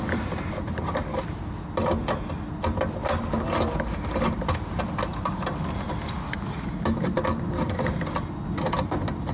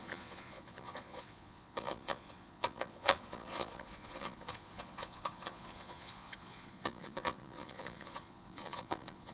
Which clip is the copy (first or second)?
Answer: second